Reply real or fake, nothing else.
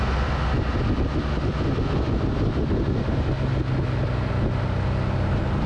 real